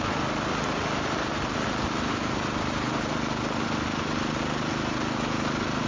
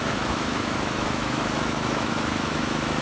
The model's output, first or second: second